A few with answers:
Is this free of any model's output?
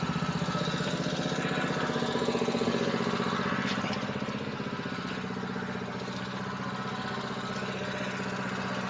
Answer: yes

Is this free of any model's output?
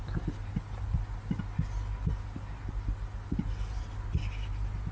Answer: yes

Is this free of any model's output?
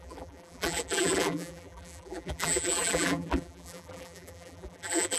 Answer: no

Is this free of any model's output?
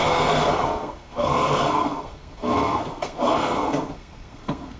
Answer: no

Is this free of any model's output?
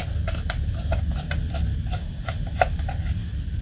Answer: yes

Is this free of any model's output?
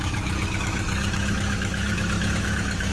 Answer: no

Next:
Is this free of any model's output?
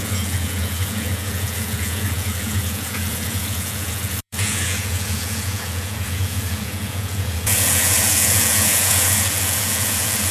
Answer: no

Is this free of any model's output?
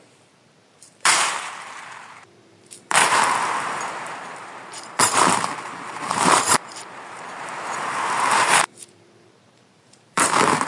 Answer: no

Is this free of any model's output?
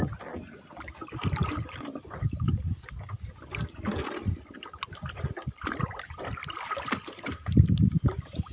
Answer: yes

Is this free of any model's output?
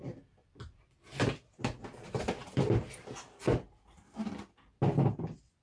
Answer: yes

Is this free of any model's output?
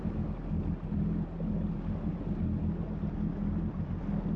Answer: yes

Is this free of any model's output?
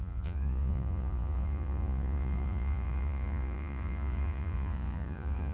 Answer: no